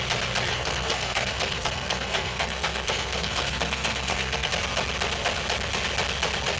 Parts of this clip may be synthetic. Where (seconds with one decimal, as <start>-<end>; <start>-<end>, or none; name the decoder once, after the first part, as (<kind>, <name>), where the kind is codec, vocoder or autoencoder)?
0.5-4.5 (codec, SNAC)